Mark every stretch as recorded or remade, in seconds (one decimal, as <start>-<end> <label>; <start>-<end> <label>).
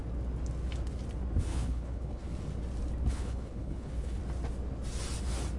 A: 0.0-1.4 recorded; 1.4-2.3 remade; 2.3-3.1 recorded; 3.1-4.2 remade; 4.2-5.6 recorded